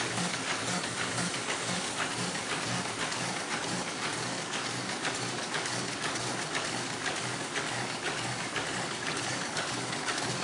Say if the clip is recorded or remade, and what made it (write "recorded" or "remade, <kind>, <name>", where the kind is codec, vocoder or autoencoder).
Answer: remade, codec, DAC